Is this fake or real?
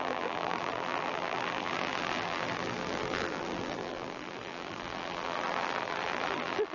fake